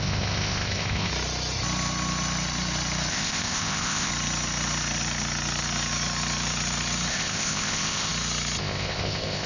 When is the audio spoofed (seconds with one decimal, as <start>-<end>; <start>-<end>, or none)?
0.0-1.1; 3.1-4.1; 7.1-8.1; 8.6-9.5